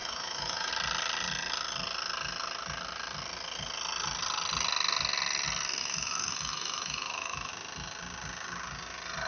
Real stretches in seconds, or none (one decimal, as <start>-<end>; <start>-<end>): 0.7-5.8; 7.5-9.3